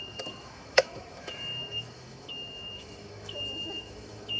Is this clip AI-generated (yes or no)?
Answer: yes